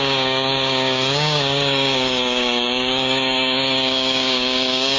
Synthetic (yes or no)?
yes